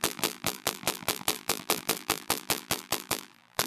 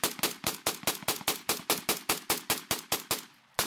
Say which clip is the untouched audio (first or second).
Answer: second